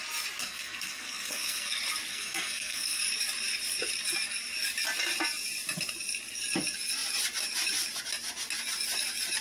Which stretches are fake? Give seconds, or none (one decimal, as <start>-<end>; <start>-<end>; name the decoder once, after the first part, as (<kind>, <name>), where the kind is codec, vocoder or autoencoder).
0.4-1.7 (codec, SNAC); 2.1-3.0